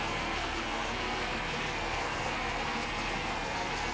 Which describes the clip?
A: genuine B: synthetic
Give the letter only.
B